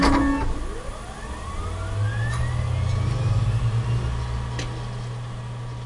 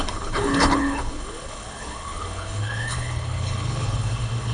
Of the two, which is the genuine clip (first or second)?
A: first